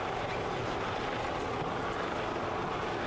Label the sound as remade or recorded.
recorded